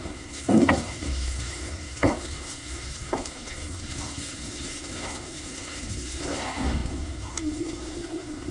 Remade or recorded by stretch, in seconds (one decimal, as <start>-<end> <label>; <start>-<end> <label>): 0.0-8.5 remade